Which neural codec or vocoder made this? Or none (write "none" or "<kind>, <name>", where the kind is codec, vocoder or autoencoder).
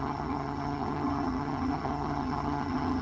vocoder, HiFi-GAN